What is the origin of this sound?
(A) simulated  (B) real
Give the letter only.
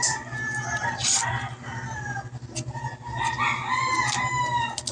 B